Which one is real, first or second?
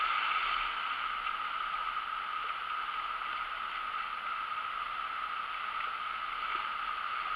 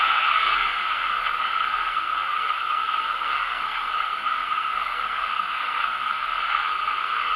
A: first